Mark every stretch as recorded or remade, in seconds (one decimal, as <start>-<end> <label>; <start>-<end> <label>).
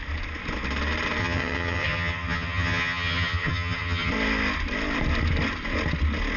0.0-1.2 recorded; 1.2-4.1 remade; 4.1-6.4 recorded